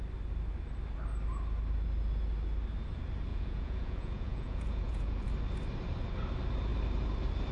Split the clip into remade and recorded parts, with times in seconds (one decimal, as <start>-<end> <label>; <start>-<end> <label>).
0.0-3.3 recorded; 3.3-5.3 remade; 5.3-7.5 recorded